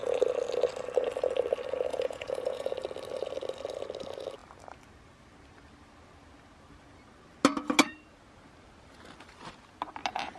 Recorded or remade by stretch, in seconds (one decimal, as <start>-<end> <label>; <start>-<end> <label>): 0.0-1.9 recorded; 1.9-2.7 remade; 2.7-10.4 recorded